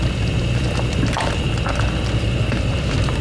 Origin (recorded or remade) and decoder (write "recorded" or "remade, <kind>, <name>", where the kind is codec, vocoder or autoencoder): remade, vocoder, BigVGAN v2